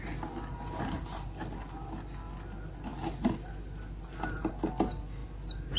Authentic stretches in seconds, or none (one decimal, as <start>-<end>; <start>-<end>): 0.0-5.8